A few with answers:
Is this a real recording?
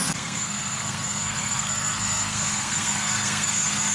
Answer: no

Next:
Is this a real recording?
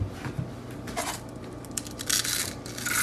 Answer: yes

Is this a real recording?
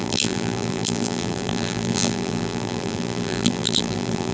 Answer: no